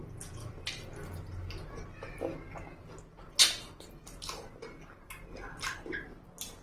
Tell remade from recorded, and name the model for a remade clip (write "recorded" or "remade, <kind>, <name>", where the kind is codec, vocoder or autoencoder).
recorded